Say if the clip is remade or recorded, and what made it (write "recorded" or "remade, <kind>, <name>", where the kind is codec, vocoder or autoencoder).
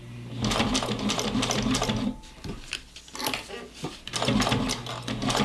recorded